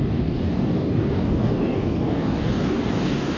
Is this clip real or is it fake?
fake